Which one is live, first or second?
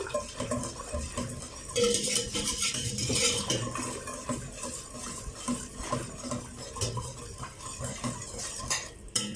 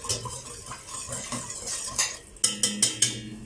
second